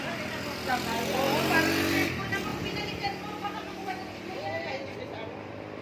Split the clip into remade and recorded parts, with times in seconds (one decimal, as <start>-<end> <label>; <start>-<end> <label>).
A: 0.0-5.8 recorded

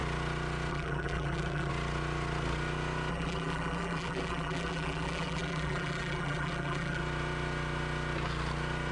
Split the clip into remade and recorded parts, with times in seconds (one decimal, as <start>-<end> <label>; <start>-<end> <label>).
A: 0.0-0.7 recorded; 0.7-1.7 remade; 1.7-3.1 recorded; 3.1-7.0 remade; 7.0-8.9 recorded

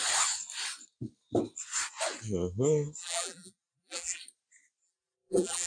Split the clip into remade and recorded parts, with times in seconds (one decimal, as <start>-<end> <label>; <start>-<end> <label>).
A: 0.0-3.0 recorded; 3.0-4.2 remade; 4.2-4.8 recorded; 4.8-5.7 remade

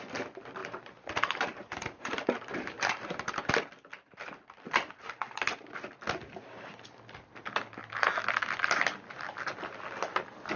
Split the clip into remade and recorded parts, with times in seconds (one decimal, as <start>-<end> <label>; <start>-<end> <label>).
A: 0.0-0.6 recorded; 0.6-3.5 remade; 3.5-10.6 recorded

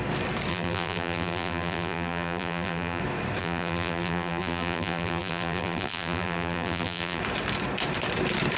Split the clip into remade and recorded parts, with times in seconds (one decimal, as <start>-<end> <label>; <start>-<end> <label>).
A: 0.0-0.5 recorded; 0.5-3.0 remade; 3.0-3.4 recorded; 3.4-7.2 remade; 7.2-8.6 recorded

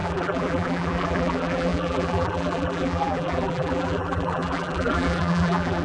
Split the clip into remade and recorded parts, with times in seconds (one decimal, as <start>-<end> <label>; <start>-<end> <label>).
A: 0.0-5.8 remade

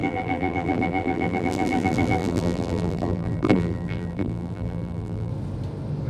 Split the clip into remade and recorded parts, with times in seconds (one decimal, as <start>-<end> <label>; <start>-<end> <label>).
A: 0.0-5.3 remade; 5.3-6.1 recorded